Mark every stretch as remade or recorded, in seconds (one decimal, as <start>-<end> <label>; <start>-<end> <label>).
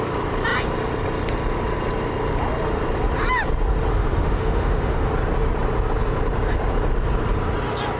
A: 0.0-3.9 recorded; 3.9-5.1 remade; 5.1-8.0 recorded